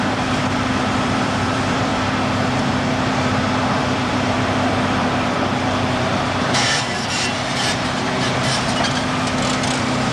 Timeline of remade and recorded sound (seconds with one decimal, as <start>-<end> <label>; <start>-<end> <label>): 0.0-1.9 remade; 1.9-3.0 recorded; 3.0-7.3 remade; 7.3-10.1 recorded